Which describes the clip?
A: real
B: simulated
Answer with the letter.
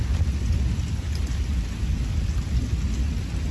A